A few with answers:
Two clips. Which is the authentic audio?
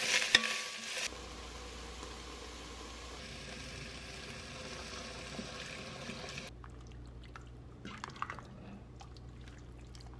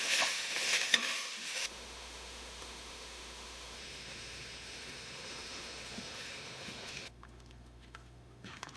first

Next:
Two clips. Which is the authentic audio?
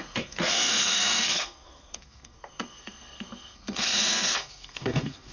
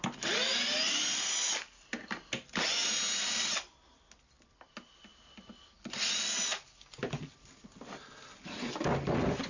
second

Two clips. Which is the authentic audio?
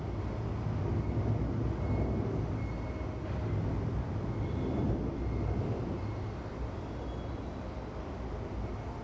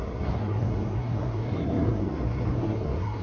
first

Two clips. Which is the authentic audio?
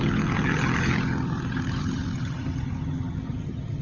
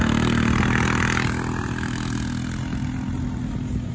second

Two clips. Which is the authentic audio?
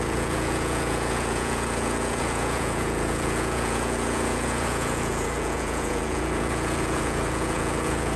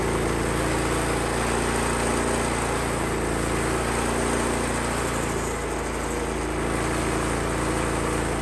second